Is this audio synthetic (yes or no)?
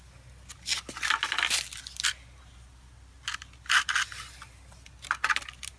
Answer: no